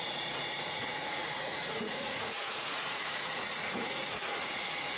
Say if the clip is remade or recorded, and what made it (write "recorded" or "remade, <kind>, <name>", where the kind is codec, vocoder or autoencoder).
remade, vocoder, Vocos